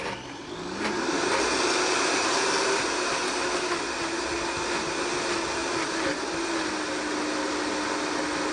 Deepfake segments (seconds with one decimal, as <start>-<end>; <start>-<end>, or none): none